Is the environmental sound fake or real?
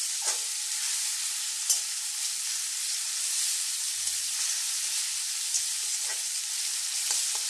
real